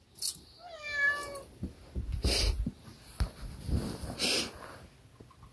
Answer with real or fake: real